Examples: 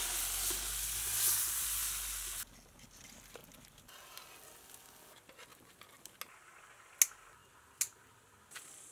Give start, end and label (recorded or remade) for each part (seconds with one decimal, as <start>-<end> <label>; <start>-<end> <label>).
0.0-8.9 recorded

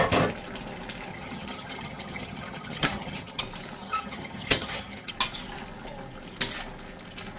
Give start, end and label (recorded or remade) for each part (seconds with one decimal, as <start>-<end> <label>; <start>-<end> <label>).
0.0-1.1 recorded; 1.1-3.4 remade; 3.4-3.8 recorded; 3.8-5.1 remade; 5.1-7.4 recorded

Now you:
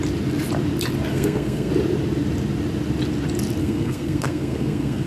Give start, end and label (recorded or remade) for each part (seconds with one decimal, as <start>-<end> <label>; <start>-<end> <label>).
0.0-1.1 recorded; 1.1-1.7 remade; 1.7-3.6 recorded; 3.6-5.1 remade

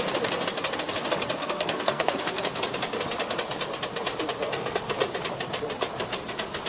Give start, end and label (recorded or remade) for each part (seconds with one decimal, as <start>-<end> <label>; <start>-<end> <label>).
0.0-1.4 recorded; 1.4-2.4 remade; 2.4-6.7 recorded

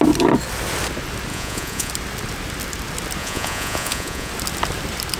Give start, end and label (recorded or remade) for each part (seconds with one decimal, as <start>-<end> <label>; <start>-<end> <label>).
0.0-1.3 recorded; 1.3-1.9 remade; 1.9-3.2 recorded; 3.2-4.3 remade; 4.3-5.2 recorded